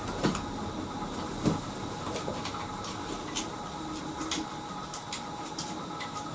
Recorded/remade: recorded